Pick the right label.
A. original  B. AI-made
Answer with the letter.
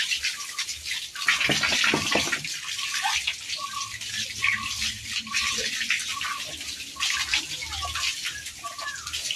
A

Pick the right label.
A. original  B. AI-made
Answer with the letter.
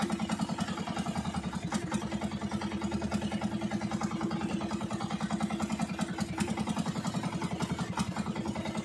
A